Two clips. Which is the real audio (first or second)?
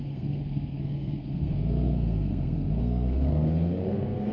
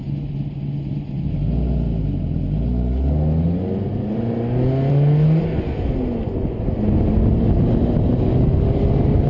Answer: second